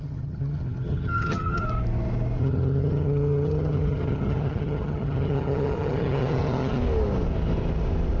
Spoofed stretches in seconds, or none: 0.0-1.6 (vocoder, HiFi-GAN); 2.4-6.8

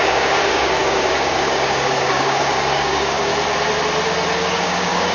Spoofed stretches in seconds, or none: 0.0-3.3 (codec, DAC); 4.5-5.1

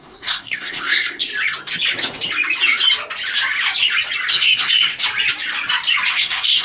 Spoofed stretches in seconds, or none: 0.0-1.3 (codec, SNAC); 4.3-4.9; 6.1-6.6

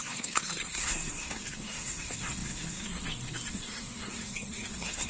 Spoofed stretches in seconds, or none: 0.0-5.1 (codec, SNAC)